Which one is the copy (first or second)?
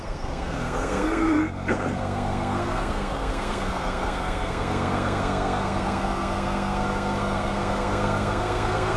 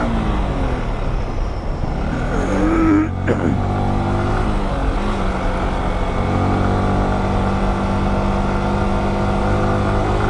first